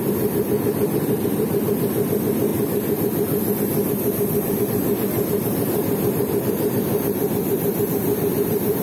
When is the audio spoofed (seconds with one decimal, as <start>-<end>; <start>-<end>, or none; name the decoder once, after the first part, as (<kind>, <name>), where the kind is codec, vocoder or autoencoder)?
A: 0.0-2.5 (vocoder, BigVGAN v2); 4.6-8.8